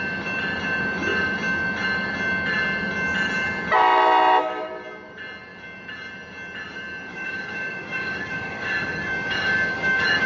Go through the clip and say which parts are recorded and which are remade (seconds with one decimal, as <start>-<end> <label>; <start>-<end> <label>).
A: 0.0-7.1 recorded; 7.1-10.3 remade